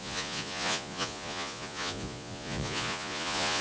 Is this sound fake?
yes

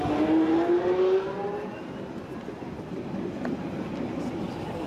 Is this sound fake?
no